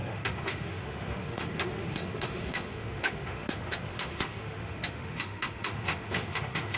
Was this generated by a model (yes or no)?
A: yes